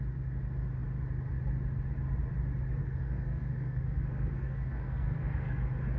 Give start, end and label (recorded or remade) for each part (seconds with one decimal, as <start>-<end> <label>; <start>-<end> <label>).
0.0-2.8 recorded; 2.8-5.6 remade; 5.6-6.0 recorded